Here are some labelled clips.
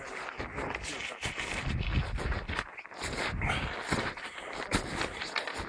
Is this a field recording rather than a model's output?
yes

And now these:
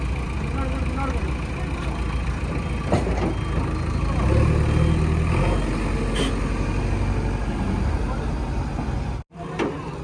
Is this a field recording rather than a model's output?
yes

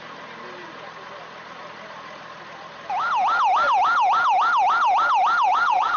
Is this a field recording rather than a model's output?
yes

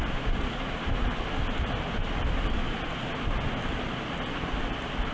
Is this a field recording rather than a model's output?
yes